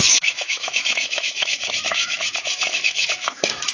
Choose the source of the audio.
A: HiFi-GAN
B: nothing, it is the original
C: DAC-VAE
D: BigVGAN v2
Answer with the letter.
C